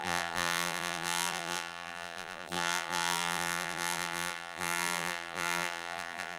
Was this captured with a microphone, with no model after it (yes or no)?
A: no